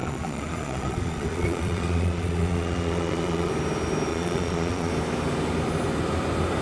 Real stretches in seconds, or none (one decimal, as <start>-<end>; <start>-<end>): 3.5-4.1; 4.9-6.6